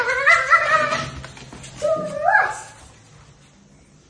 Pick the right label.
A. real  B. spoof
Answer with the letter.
A